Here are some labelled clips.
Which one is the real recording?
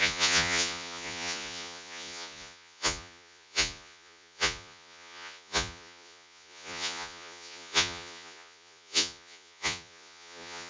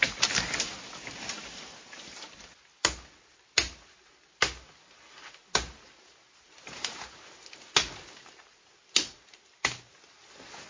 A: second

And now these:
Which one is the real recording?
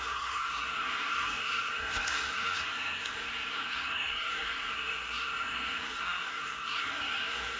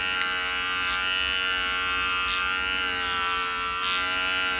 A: second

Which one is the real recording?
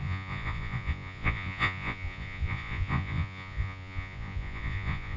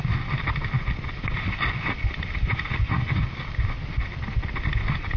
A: second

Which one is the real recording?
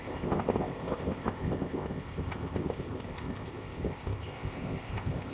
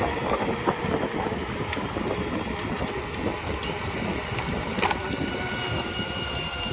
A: second